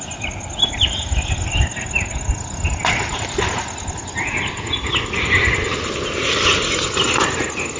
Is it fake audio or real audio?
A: real